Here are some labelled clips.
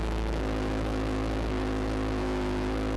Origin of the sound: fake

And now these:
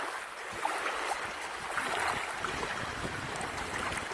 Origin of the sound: real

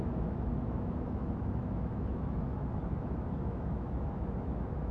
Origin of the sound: fake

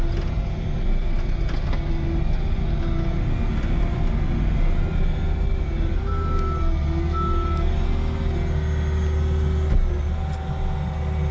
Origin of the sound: real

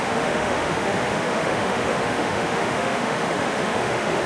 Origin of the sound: fake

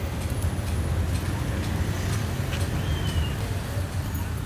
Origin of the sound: real